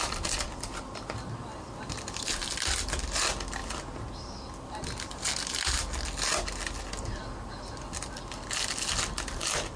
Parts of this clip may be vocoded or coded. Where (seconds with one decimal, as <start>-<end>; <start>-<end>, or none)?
none